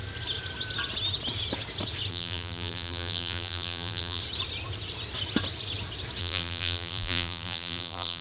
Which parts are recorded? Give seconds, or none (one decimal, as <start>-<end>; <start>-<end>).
0.0-2.1; 4.2-6.2